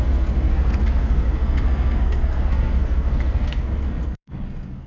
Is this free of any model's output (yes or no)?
no